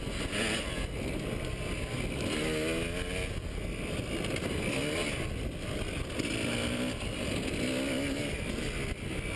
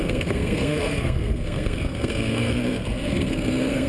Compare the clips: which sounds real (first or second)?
first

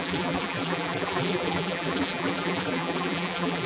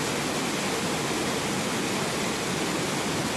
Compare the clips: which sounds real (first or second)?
second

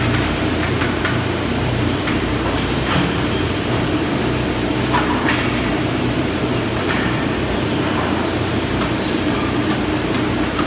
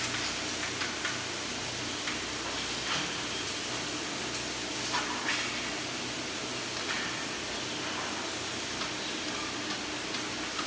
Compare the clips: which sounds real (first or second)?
second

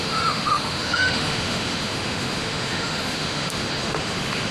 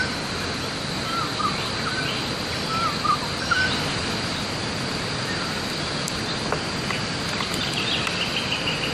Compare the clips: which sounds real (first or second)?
second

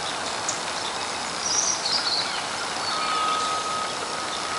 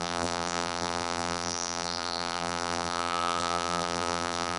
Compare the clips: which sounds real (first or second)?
first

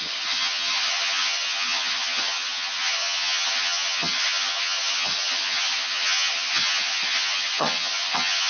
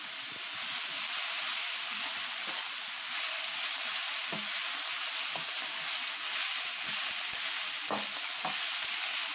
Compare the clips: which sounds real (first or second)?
second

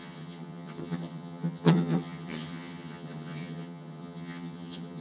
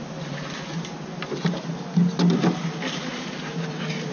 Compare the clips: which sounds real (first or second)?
second